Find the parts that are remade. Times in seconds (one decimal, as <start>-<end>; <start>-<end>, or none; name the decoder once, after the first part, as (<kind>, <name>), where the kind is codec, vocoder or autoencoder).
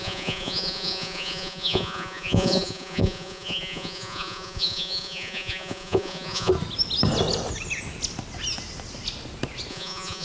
0.0-6.5 (vocoder, Vocos); 9.7-10.2